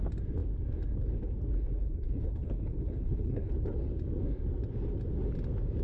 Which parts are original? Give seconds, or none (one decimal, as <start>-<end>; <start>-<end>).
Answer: 0.0-1.8; 3.5-5.8